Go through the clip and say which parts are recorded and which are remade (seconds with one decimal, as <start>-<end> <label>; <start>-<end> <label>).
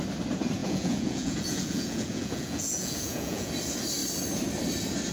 0.0-0.6 recorded; 0.6-3.5 remade; 3.5-5.1 recorded